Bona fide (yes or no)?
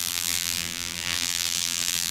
no